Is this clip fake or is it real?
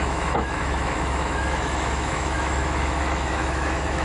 fake